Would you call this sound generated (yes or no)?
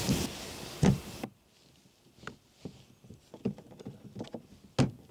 no